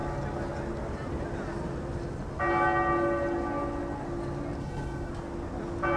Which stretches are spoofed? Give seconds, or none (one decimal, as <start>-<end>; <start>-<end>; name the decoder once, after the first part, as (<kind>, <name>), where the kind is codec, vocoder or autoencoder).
4.6-5.1 (codec, HILCodec)